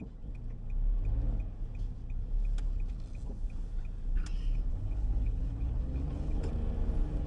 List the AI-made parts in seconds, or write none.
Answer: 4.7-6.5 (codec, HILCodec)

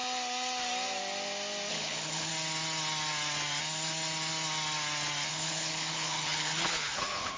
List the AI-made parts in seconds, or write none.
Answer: 1.7-2.3 (codec, HILCodec); 5.3-7.4

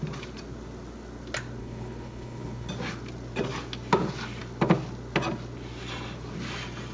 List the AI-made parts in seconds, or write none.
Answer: 1.6-2.7 (codec, HILCodec)

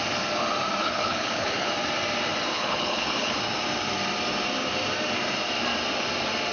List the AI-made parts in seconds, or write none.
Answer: 0.8-1.7 (codec, HILCodec); 2.5-3.4

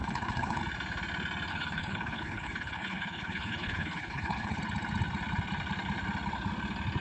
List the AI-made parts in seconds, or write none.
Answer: 0.0-0.6 (codec, HILCodec); 1.5-4.6

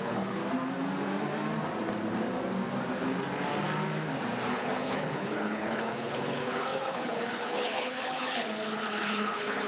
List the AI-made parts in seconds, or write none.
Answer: 0.0-0.4 (codec, HILCodec); 4.5-9.7

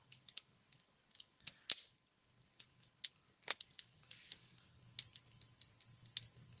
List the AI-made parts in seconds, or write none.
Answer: none

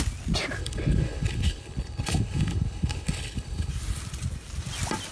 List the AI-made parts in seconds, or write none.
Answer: 0.6-3.7 (codec, HILCodec)